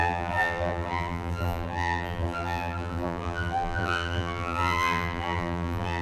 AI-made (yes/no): yes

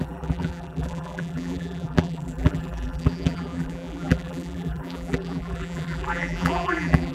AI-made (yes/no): yes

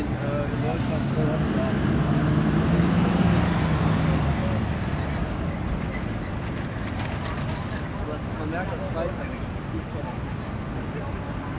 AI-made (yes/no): no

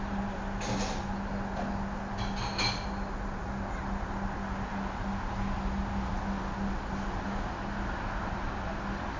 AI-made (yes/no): no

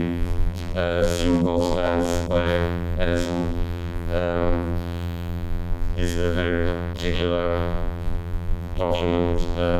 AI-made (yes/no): yes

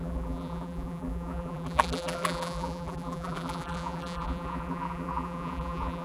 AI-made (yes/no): yes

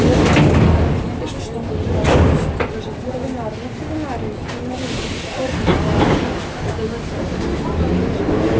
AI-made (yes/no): no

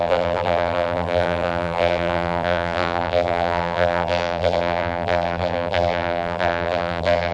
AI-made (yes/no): yes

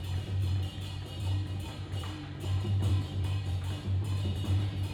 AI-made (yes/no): yes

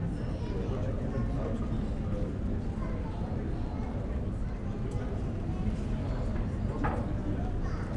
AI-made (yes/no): no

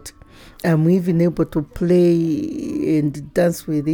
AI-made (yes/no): no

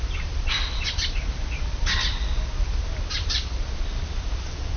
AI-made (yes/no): yes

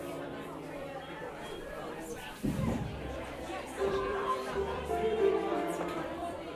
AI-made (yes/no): yes